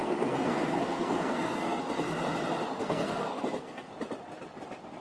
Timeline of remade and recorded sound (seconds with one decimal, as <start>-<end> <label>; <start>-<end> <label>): 0.0-1.8 remade; 1.8-2.8 recorded; 2.8-3.9 remade; 3.9-5.0 recorded